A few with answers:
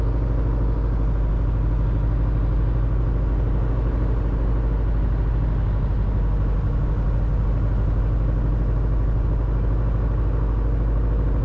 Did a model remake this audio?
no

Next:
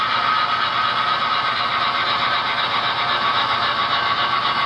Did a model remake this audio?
no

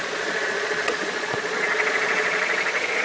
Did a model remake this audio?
yes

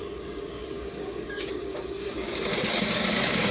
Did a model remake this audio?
yes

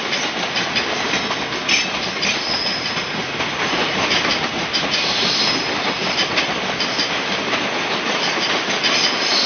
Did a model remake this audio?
no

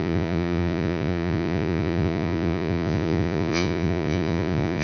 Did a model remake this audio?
yes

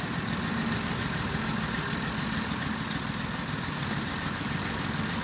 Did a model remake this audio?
no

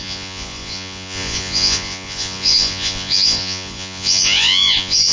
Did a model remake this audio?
yes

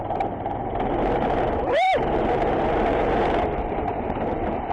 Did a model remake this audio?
yes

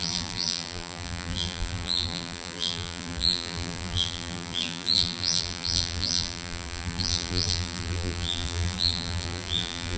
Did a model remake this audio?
yes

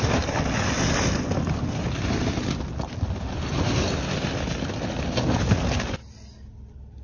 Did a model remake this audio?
no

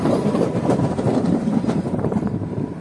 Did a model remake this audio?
yes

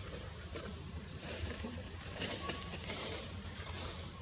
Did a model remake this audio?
yes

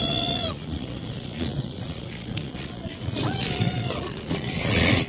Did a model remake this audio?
yes